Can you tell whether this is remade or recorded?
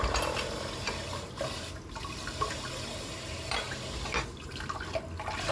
recorded